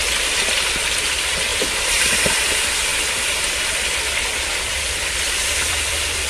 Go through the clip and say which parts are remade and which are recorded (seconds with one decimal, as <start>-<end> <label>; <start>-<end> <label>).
0.0-1.5 recorded; 1.5-2.3 remade; 2.3-4.5 recorded; 4.5-6.3 remade